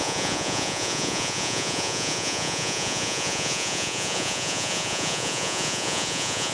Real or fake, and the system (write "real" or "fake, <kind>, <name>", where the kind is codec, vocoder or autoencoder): fake, vocoder, Vocos